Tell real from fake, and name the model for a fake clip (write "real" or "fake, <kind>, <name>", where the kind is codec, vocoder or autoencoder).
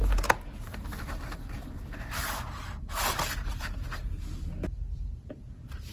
fake, vocoder, BigVGAN v2